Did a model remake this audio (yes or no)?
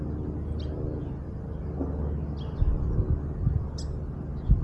no